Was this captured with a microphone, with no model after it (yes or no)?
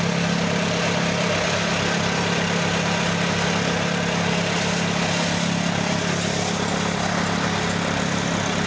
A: yes